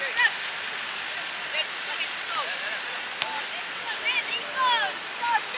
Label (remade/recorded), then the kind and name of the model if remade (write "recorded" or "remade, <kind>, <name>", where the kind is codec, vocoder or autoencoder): recorded